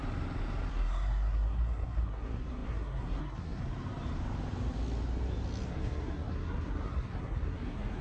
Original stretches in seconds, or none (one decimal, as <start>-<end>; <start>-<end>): 0.0-0.7; 3.6-5.7